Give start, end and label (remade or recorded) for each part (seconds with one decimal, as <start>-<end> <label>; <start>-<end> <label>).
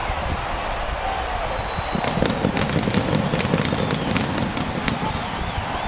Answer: 0.0-5.9 recorded